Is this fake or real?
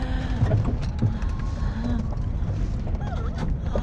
real